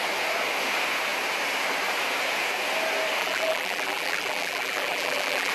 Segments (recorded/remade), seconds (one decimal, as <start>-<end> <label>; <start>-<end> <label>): 0.0-3.2 recorded; 3.2-5.5 remade